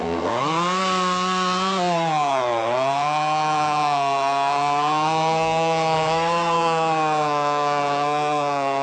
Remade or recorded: remade